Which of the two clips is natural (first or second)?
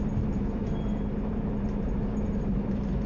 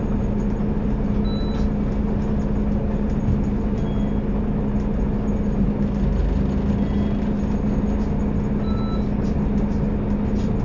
second